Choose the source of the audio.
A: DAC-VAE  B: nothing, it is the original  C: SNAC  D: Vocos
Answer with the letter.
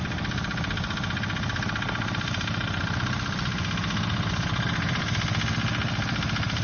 B